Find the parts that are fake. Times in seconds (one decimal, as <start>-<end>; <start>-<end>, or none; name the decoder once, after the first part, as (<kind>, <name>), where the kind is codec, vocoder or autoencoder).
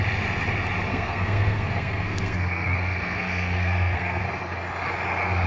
0.9-4.2 (codec, SNAC)